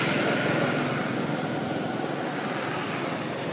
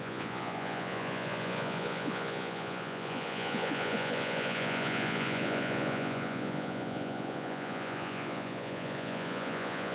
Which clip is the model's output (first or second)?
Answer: second